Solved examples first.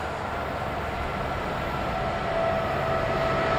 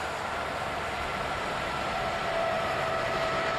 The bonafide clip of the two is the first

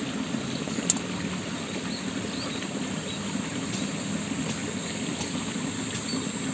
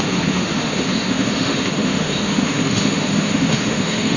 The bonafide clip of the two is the first